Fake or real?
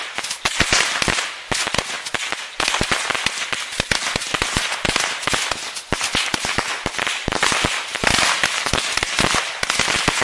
real